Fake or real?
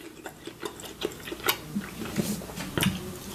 real